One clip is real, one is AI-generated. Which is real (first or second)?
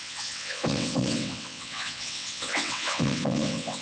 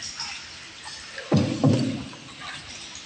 second